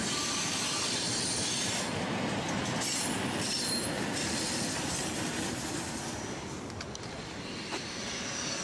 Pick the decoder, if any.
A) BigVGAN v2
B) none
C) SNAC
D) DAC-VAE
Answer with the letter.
B